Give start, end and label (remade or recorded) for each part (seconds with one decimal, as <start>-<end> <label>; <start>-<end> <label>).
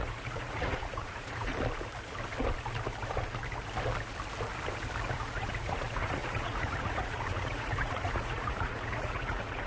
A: 0.0-1.5 remade; 1.5-5.1 recorded; 5.1-9.7 remade